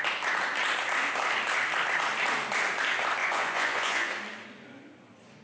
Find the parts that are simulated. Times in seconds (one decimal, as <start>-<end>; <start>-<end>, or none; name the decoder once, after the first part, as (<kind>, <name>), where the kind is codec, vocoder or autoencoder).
3.2-4.1 (vocoder, Vocos)